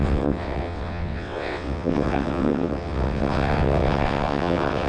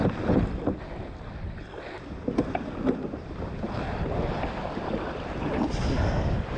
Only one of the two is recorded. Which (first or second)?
second